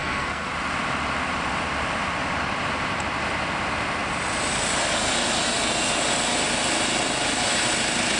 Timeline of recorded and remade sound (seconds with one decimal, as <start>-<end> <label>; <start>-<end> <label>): 0.0-0.5 remade; 0.5-8.2 recorded